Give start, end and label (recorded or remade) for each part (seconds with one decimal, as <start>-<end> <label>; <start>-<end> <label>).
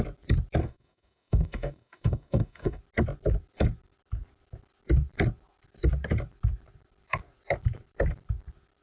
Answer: 0.0-0.6 recorded; 0.6-2.8 remade; 2.8-8.8 recorded